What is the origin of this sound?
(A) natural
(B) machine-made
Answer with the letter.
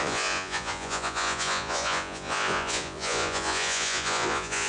B